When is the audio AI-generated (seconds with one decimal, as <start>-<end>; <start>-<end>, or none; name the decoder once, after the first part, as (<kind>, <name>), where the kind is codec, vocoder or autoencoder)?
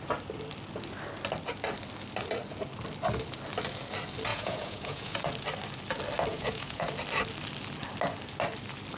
4.3-5.2 (vocoder, Vocos); 6.3-6.9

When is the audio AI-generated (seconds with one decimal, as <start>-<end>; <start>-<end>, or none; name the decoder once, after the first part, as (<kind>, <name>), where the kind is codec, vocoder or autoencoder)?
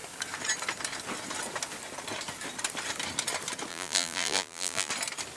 3.7-4.9 (vocoder, BigVGAN v2)